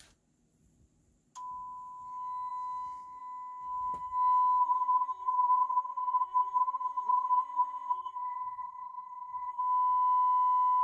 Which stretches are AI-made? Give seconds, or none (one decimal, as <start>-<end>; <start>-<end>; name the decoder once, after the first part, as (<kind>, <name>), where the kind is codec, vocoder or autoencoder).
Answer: 4.6-9.6 (codec, SNAC)